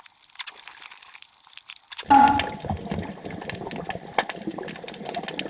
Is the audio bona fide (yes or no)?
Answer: yes